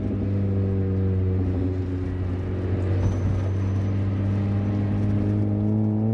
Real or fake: real